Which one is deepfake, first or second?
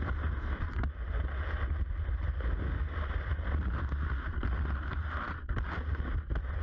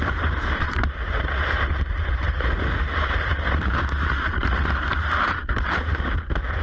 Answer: second